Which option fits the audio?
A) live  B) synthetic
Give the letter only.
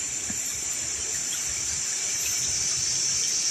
B